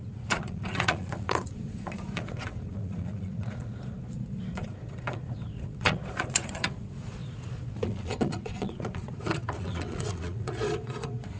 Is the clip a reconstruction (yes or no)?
yes